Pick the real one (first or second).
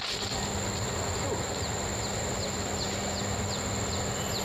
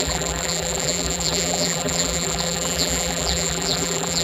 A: first